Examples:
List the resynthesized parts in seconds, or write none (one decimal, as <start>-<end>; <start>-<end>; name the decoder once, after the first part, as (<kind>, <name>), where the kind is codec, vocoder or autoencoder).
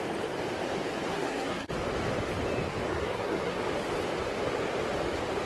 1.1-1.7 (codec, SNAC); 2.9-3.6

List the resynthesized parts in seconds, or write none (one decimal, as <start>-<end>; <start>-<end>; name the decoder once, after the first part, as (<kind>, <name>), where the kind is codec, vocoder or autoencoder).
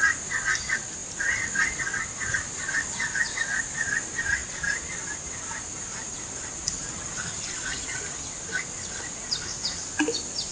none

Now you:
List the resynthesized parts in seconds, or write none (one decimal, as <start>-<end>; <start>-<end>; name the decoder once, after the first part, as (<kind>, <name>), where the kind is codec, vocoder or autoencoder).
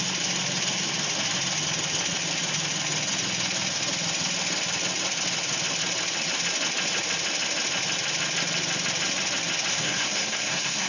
9.7-10.9 (codec, SNAC)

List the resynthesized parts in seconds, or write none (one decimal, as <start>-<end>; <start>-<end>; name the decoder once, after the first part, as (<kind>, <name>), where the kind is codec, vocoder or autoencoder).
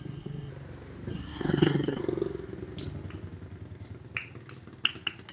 0.0-0.5 (codec, SNAC); 1.1-2.0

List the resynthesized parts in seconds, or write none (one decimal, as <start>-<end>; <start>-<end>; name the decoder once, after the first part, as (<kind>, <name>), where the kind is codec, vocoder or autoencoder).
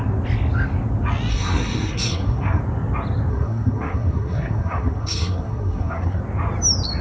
1.3-2.6 (codec, SNAC); 3.3-6.2